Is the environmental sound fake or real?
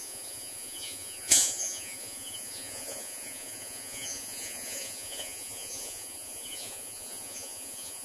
fake